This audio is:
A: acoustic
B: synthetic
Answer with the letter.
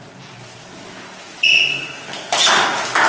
A